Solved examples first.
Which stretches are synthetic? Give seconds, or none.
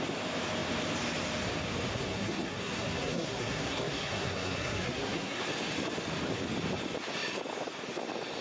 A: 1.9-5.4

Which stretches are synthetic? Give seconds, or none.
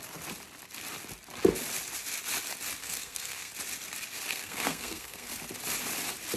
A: 2.8-3.5; 4.3-5.3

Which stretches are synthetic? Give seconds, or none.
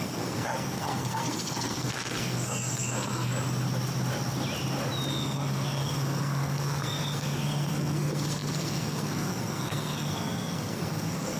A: 0.0-3.3; 5.1-11.4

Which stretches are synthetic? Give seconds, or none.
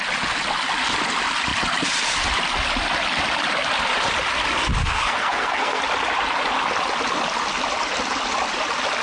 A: 4.8-5.8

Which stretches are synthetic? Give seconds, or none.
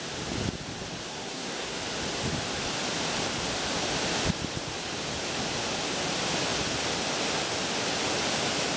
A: 1.1-1.8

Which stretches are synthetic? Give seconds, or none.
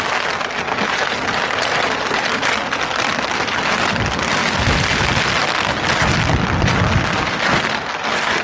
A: none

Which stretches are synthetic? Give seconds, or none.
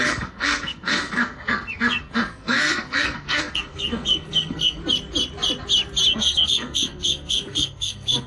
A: 0.0-4.8; 6.1-8.3